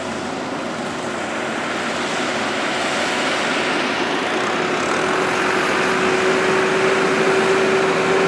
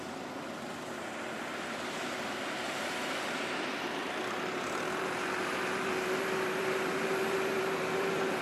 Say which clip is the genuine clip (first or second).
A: first